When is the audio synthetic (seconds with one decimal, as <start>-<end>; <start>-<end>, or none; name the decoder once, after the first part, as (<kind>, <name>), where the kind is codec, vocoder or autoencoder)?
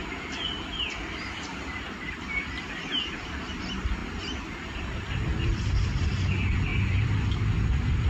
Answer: 0.0-8.1 (vocoder, BigVGAN v2)